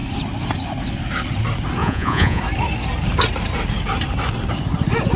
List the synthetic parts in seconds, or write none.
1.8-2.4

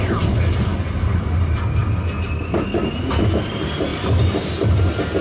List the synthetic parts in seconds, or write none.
none